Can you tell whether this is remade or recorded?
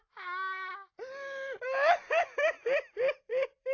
recorded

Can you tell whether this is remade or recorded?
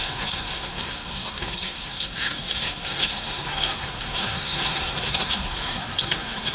remade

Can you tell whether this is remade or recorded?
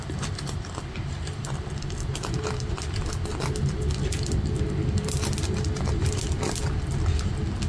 recorded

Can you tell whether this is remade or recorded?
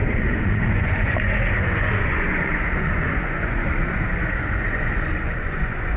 remade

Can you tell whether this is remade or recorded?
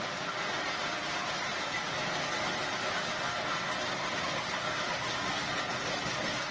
recorded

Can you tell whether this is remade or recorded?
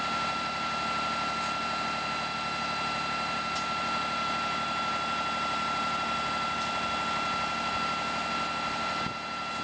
recorded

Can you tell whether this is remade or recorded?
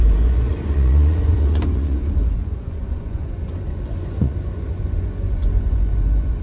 remade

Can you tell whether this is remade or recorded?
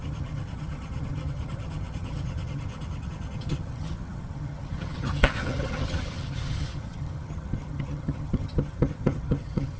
remade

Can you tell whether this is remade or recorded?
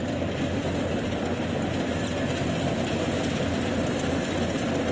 recorded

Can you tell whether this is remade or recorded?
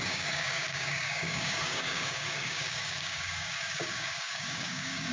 remade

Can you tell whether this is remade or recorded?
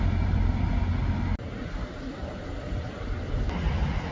recorded